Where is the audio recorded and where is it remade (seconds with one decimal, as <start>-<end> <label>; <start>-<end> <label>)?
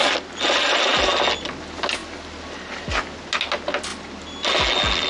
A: 0.0-5.1 recorded